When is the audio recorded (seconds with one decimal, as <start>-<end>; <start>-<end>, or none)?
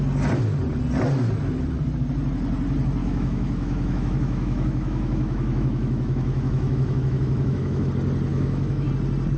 0.0-3.0; 7.9-8.3; 8.9-9.4